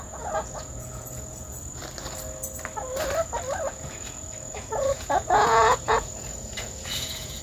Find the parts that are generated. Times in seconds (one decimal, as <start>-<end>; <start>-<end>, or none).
0.0-1.8; 3.7-7.4